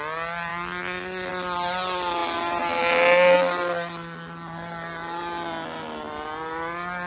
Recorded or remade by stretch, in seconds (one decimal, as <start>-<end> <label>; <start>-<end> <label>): 0.0-7.1 recorded